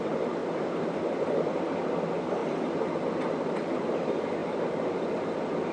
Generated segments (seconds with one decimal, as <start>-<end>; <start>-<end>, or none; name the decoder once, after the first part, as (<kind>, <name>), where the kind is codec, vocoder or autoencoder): none